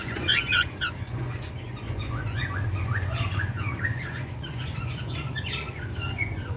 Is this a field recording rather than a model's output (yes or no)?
no